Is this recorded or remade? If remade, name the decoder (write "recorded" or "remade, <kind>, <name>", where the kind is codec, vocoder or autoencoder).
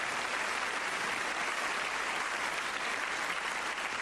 recorded